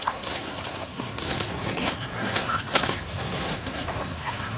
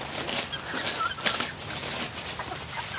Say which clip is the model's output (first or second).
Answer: first